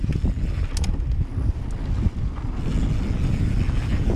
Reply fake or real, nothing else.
real